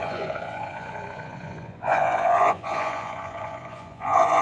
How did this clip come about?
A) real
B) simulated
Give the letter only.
B